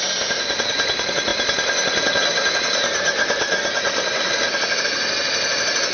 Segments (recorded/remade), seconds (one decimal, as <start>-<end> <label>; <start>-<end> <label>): 0.0-5.9 recorded